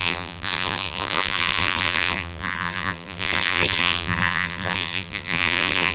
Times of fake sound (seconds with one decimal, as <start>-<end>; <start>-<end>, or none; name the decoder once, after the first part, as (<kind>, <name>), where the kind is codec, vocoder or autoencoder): 0.0-5.9 (vocoder, BigVGAN v2)

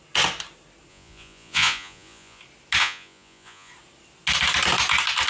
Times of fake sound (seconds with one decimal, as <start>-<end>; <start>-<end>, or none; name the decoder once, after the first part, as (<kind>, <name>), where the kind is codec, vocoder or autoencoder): 0.9-2.4 (vocoder, Vocos); 2.8-3.7